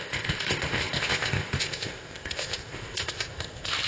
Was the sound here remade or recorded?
remade